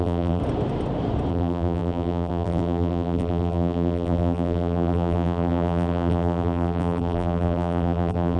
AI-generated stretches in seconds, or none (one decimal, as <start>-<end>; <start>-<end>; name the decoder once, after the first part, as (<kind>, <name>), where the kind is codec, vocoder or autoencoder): 0.0-0.4 (vocoder, BigVGAN v2); 1.3-8.4